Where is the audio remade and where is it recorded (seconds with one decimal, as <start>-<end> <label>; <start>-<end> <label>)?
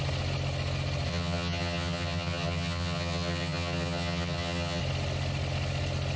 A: 0.0-1.1 recorded; 1.1-4.8 remade; 4.8-6.2 recorded